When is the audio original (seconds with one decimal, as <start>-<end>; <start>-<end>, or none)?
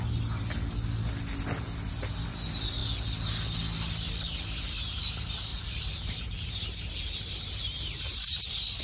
0.0-5.5; 8.4-8.8